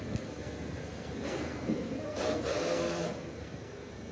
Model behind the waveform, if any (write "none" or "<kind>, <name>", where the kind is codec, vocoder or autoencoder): codec, SNAC